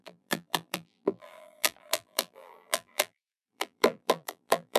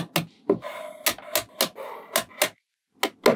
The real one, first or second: second